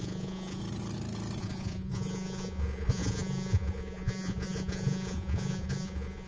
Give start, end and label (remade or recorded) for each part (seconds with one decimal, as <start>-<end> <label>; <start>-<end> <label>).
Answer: 0.0-0.6 remade; 0.6-1.4 recorded; 1.4-6.3 remade